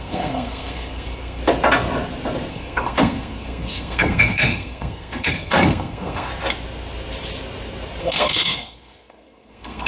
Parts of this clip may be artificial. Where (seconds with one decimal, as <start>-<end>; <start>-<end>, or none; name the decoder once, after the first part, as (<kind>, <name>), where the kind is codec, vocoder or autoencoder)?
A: 0.0-1.4 (codec, SNAC); 2.5-6.3; 8.0-9.9